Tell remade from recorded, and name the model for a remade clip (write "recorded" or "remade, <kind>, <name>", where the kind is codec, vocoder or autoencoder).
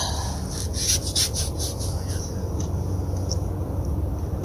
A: recorded